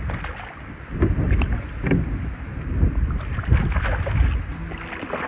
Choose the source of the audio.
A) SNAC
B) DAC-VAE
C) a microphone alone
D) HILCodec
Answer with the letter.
C